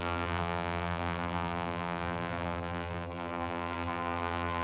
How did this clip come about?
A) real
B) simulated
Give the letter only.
B